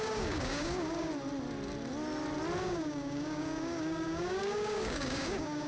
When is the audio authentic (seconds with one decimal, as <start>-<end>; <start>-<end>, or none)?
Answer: 1.1-2.6